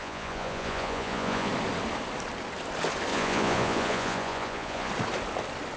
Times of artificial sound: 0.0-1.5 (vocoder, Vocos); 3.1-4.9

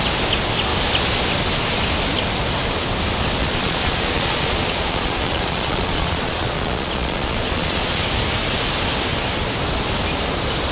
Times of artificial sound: 3.4-8.0 (vocoder, Vocos)

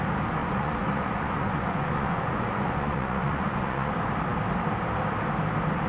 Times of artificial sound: 0.4-3.9 (vocoder, Vocos)

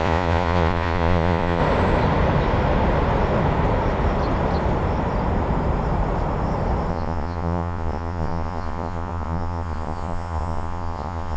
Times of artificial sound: 0.0-1.6 (vocoder, Vocos); 6.9-11.4

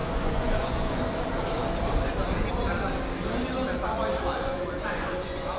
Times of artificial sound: 0.0-1.0 (vocoder, Vocos); 4.4-5.6

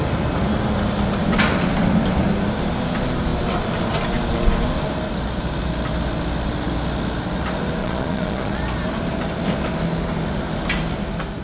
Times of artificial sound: 7.8-8.6 (vocoder, Vocos)

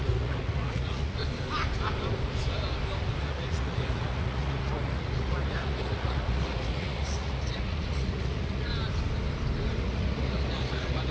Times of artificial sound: 0.0-1.2 (vocoder, Vocos); 3.2-8.7; 9.8-11.1